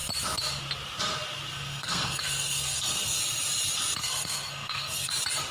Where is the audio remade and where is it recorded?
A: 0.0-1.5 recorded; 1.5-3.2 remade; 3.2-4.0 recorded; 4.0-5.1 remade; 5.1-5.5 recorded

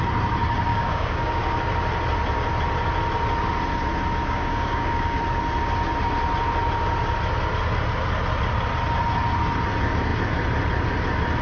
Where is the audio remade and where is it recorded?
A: 0.0-0.7 recorded; 0.7-1.6 remade; 1.6-4.2 recorded; 4.2-5.2 remade; 5.2-11.4 recorded

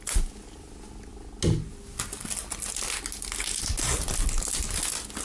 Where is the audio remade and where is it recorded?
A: 0.0-5.2 recorded

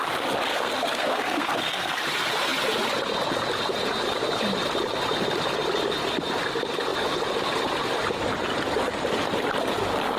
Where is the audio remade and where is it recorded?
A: 0.0-0.5 recorded; 0.5-2.0 remade; 2.0-10.2 recorded

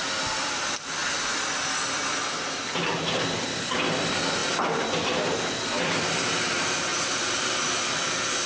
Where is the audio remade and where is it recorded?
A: 0.0-8.5 recorded

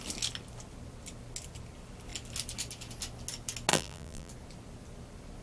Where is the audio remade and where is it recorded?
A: 0.0-3.7 recorded; 3.7-4.3 remade; 4.3-5.4 recorded

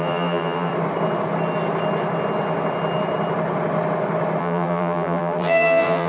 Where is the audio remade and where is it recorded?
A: 0.0-0.7 remade; 0.7-4.4 recorded; 4.4-6.1 remade

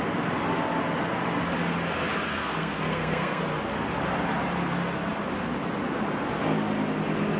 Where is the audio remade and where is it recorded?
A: 0.0-2.3 recorded; 2.3-3.4 remade; 3.4-7.4 recorded